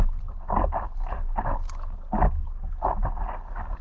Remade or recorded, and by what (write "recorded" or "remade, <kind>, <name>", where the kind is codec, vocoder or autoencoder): recorded